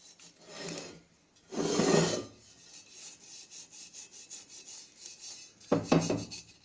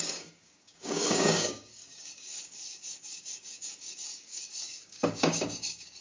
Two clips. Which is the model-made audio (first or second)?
second